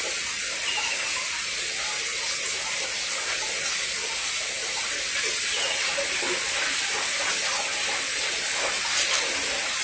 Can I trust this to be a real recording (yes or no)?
yes